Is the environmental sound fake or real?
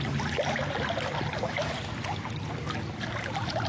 real